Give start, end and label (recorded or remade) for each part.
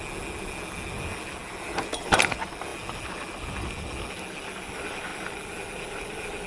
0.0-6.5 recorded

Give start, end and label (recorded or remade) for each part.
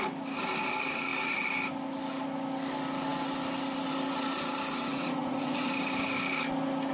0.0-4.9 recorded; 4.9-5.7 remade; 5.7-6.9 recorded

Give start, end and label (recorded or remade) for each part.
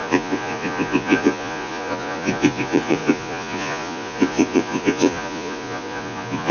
0.0-6.5 remade